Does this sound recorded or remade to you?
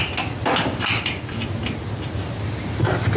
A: recorded